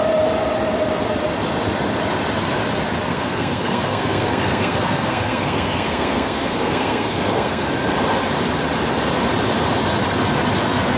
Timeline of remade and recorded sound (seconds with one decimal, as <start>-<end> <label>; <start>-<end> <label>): 0.0-3.1 recorded; 3.1-7.7 remade; 7.7-11.0 recorded